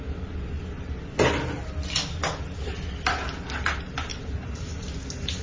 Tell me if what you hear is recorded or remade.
recorded